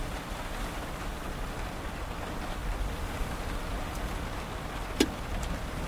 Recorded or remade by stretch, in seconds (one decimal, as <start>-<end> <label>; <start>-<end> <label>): 0.0-1.1 recorded; 1.1-2.2 remade; 2.2-2.6 recorded; 2.6-5.9 remade